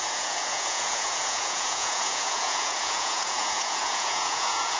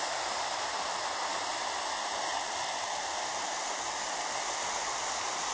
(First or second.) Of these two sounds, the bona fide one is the second